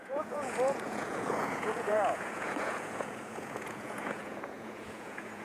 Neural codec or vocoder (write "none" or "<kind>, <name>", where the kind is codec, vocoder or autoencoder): vocoder, Vocos